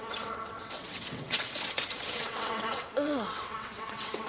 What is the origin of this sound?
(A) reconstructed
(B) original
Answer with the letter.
A